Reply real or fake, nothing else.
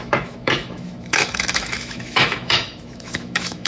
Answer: fake